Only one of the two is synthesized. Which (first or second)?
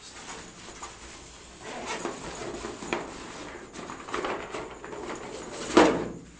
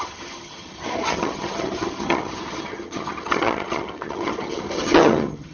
second